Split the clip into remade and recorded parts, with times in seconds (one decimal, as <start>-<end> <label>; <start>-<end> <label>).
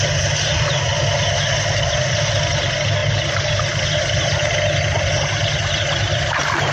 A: 0.0-6.7 recorded